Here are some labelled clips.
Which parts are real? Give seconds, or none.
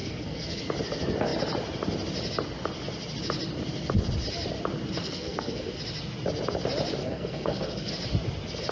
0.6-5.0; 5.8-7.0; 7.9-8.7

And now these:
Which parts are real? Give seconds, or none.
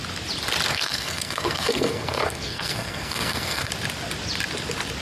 0.0-0.7; 3.7-5.0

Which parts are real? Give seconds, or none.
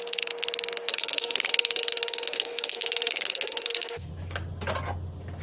0.0-0.9; 4.1-5.4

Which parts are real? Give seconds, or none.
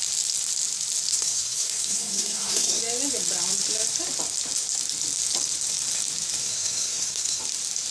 0.0-1.1; 2.8-6.4; 7.4-7.9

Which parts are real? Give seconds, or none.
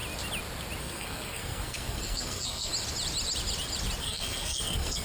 0.0-0.8; 2.7-4.0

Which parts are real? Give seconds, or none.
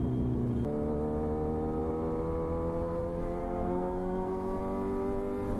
0.0-3.4; 4.6-5.6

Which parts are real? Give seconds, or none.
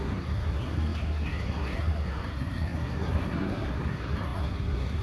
none